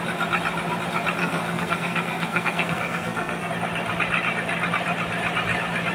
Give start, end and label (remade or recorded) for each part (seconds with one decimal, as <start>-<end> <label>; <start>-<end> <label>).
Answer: 0.0-1.2 recorded; 1.2-3.5 remade; 3.5-5.9 recorded